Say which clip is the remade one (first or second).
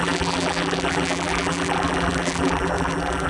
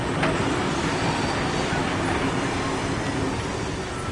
first